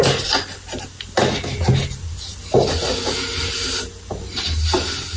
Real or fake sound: real